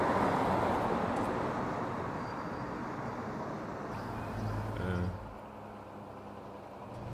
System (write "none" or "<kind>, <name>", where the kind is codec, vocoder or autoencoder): none